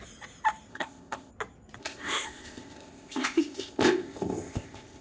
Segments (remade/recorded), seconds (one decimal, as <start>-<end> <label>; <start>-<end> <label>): 0.0-0.7 recorded; 0.7-1.3 remade; 1.3-1.8 recorded; 1.8-5.0 remade